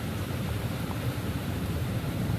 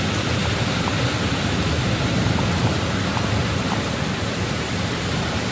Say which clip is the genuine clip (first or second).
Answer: second